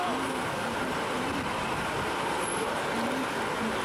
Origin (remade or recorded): recorded